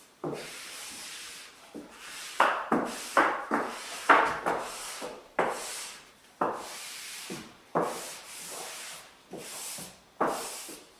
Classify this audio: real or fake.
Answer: fake